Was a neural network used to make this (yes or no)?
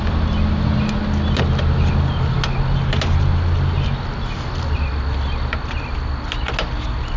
no